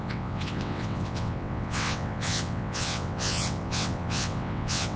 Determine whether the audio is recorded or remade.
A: remade